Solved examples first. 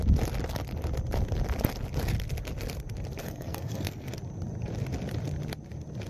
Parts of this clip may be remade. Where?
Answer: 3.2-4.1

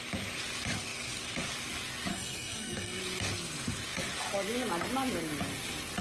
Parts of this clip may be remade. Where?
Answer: 2.1-3.0

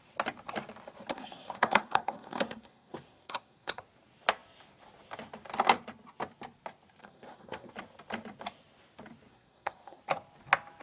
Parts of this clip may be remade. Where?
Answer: 1.1-3.8; 7.0-7.7; 9.3-10.0

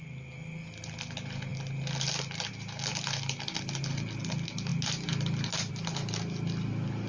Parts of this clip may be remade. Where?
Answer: none